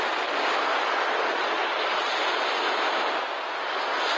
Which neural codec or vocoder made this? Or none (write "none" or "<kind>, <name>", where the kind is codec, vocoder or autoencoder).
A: none